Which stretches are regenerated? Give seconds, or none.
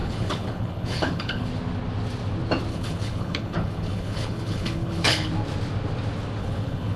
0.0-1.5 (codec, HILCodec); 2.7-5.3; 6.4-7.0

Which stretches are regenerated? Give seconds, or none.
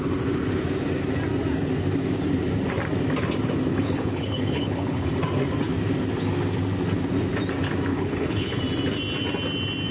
3.7-5.1 (codec, HILCodec); 7.9-8.6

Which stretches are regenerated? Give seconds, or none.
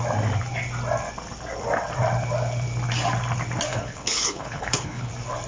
3.7-5.1 (codec, HILCodec)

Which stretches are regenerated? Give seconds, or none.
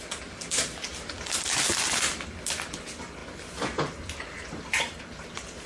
none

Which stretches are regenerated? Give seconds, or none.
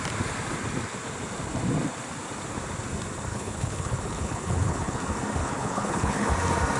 3.3-5.0 (codec, HILCodec); 5.4-6.3